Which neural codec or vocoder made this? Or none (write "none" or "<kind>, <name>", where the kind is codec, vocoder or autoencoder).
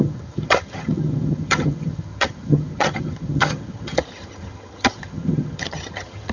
vocoder, HiFi-GAN